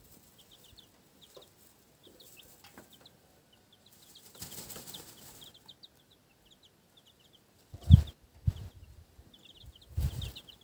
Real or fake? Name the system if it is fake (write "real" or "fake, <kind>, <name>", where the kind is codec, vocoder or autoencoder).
real